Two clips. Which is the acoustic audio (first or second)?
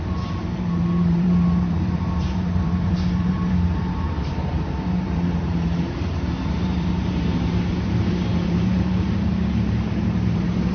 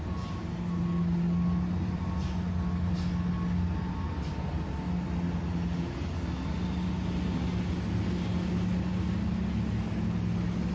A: second